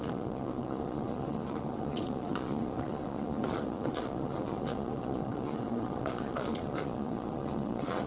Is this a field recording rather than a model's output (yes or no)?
no